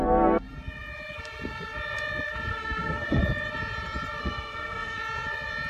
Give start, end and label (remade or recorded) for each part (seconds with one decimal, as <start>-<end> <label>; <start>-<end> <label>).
0.0-2.5 recorded; 2.5-3.2 remade; 3.2-4.2 recorded; 4.2-5.0 remade; 5.0-5.7 recorded